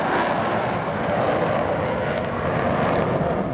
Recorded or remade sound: recorded